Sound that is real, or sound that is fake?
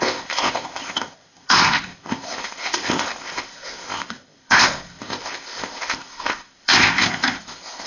fake